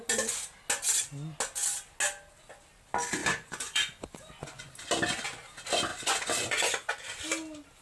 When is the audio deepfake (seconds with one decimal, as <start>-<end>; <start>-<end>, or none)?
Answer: 3.2-4.7; 5.9-6.7